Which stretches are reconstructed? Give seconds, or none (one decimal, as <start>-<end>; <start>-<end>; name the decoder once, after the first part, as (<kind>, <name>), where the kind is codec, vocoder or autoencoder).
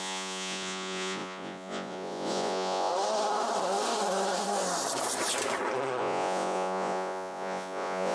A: 0.0-2.9 (vocoder, Vocos); 6.0-8.1